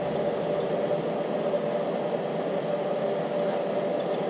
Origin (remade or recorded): recorded